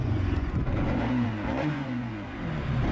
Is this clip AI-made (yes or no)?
yes